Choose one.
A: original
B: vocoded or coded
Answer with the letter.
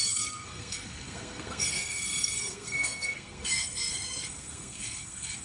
B